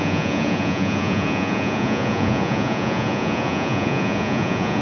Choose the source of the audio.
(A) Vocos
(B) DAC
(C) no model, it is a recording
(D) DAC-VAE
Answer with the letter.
A